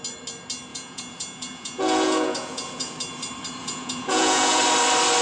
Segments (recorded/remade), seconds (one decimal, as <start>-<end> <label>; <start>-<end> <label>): 0.0-0.7 recorded; 0.7-2.9 remade; 2.9-3.6 recorded; 3.6-4.6 remade; 4.6-5.2 recorded